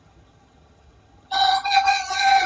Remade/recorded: remade